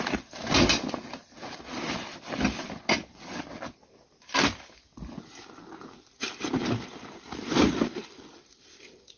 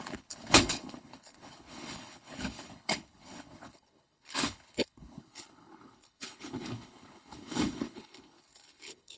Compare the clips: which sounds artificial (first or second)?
second